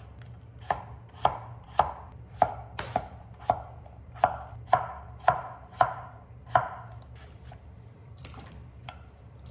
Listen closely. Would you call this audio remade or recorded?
remade